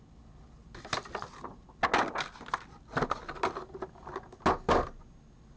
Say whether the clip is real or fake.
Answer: real